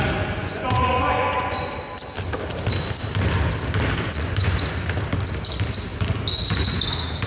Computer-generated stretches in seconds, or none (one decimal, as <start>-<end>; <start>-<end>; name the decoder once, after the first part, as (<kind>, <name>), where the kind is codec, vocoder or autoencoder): 0.4-1.7 (vocoder, Vocos); 4.1-4.7

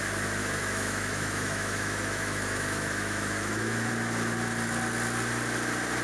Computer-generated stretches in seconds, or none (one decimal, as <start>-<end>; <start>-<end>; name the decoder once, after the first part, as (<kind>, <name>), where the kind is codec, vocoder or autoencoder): 0.4-3.9 (autoencoder, DAC-VAE)

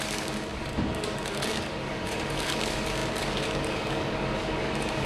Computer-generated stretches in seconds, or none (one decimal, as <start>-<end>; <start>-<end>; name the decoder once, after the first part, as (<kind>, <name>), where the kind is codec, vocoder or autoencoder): 0.0-5.1 (codec, DAC)

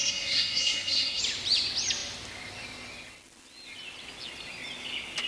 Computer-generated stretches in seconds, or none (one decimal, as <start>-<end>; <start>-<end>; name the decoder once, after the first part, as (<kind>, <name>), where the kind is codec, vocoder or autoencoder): 0.0-1.2 (codec, SNAC)

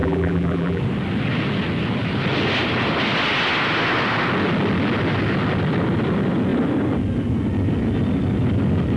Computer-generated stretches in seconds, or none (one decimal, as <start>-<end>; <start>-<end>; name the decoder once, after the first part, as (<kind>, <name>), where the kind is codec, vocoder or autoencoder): 0.0-0.8 (vocoder, BigVGAN v2)

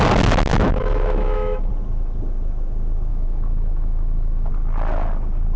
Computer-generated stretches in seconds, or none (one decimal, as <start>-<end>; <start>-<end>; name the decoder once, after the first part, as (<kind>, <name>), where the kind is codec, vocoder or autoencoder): 0.5-1.7 (autoencoder, DAC-VAE); 3.1-4.5

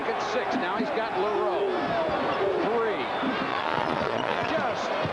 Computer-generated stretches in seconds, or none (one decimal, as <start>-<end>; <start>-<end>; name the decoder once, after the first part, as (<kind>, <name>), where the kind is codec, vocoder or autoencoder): 3.5-4.5 (vocoder, Vocos)

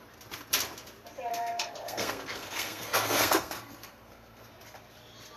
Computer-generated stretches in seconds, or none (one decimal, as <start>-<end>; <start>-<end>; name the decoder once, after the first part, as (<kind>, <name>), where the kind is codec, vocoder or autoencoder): 1.3-4.5 (codec, SNAC)